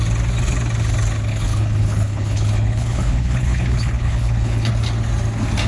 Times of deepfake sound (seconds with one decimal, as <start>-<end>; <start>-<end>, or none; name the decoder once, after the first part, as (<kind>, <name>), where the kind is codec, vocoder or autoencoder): 1.3-4.7 (codec, HILCodec)

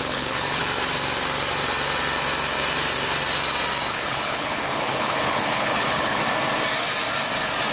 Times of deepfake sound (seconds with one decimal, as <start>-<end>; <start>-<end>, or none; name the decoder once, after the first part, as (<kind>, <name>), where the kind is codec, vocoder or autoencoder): 0.0-0.6 (codec, HILCodec); 3.9-6.2